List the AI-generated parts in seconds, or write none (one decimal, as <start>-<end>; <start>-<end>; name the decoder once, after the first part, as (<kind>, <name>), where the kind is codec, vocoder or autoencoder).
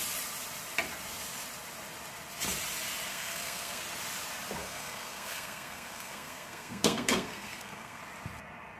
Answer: 3.1-3.8 (codec, SNAC); 4.6-8.0